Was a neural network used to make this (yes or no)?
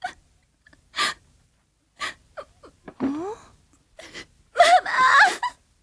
no